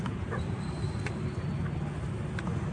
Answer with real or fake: real